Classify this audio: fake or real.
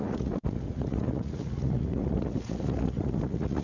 fake